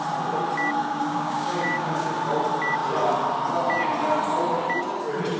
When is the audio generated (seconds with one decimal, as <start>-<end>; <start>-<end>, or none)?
0.8-2.1